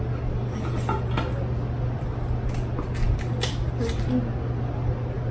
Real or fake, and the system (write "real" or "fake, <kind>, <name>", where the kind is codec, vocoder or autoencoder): real